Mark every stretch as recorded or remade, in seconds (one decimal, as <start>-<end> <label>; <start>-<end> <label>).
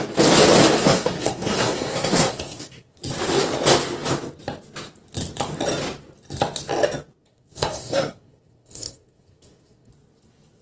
0.0-0.8 recorded; 0.8-3.0 remade; 3.0-7.2 recorded; 7.2-9.9 remade; 9.9-10.6 recorded